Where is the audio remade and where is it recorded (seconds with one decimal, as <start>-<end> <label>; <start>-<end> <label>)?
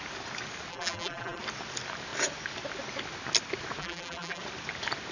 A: 0.0-0.7 recorded; 0.7-1.4 remade; 1.4-3.8 recorded; 3.8-4.4 remade; 4.4-5.1 recorded